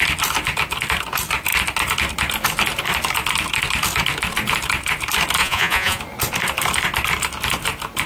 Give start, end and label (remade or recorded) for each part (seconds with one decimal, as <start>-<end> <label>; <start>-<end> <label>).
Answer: 0.0-5.4 recorded; 5.4-6.0 remade; 6.0-8.1 recorded